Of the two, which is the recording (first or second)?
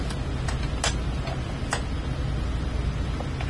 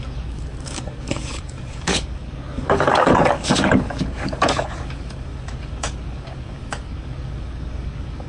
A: first